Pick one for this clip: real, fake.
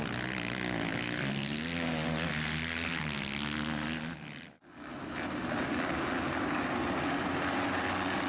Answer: real